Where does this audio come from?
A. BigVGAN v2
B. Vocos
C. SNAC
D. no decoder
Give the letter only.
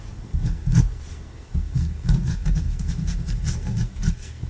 C